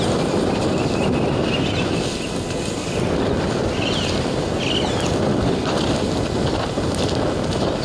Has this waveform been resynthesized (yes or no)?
no